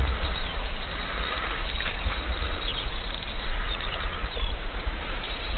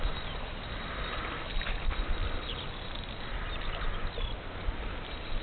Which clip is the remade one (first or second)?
first